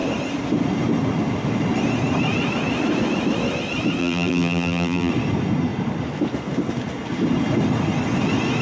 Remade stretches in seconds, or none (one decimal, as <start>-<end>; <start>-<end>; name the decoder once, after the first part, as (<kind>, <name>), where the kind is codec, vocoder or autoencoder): 4.0-5.1 (vocoder, BigVGAN v2)